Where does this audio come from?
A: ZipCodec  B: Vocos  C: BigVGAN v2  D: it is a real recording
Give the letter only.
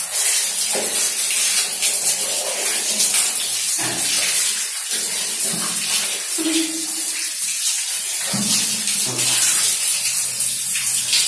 D